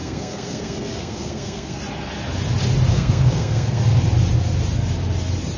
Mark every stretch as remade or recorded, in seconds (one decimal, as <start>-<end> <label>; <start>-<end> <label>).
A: 0.0-1.8 remade; 1.8-2.9 recorded; 2.9-3.8 remade; 3.8-5.6 recorded